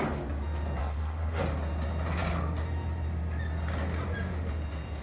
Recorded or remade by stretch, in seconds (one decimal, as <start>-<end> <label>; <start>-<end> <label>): 0.0-0.8 recorded; 0.8-1.4 remade; 1.4-5.0 recorded